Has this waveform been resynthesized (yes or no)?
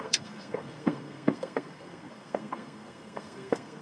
yes